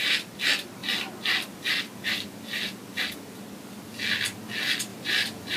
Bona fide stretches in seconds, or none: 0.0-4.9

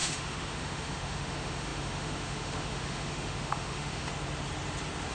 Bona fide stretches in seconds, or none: 4.1-5.1

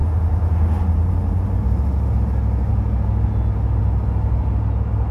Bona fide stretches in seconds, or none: 0.0-5.1

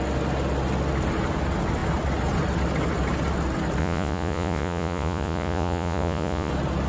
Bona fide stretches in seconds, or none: 0.0-3.8; 6.5-6.9

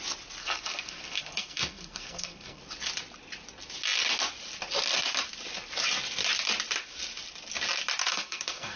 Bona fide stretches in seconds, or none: 0.0-0.4; 2.6-8.0